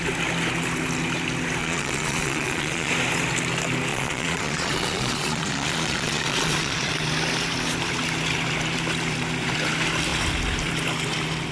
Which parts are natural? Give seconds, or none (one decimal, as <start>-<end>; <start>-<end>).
0.0-1.6; 2.9-3.9; 6.9-11.5